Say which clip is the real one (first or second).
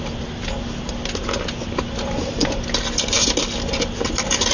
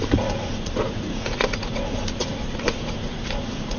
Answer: first